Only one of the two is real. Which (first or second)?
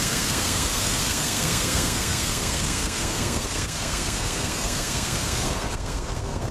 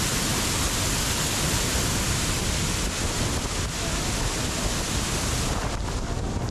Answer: second